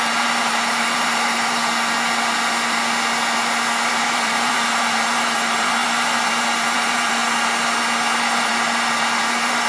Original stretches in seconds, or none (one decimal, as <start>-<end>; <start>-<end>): 1.6-3.9; 7.2-8.2